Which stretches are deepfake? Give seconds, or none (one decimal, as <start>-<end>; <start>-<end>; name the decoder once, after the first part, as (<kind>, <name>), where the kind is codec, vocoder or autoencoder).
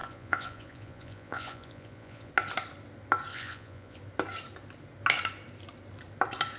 0.0-2.3 (vocoder, Vocos); 3.3-4.0